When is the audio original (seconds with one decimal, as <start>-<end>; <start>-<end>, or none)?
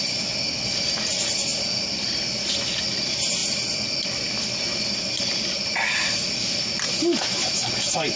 0.0-8.2